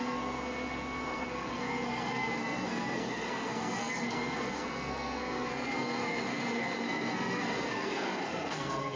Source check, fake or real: fake